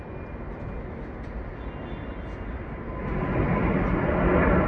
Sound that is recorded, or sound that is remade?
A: recorded